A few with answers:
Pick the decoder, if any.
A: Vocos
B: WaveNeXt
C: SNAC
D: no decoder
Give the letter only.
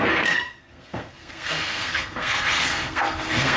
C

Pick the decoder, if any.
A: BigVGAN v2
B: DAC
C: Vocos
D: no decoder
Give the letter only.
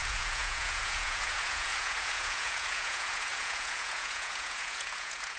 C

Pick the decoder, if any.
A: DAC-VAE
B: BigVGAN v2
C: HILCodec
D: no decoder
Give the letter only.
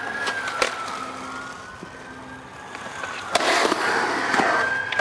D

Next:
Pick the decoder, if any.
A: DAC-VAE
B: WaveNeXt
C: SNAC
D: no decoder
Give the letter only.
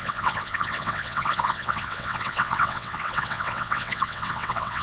B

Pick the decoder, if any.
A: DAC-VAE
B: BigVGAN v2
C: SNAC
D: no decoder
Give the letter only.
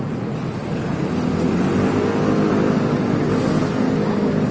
D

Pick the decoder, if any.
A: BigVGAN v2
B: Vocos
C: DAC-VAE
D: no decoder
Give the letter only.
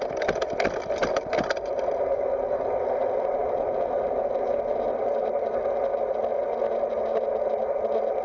D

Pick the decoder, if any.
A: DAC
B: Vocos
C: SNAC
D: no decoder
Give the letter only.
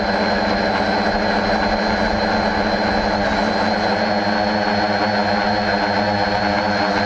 D